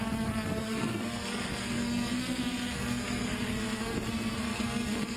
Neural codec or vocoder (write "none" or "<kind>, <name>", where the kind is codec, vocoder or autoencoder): codec, SNAC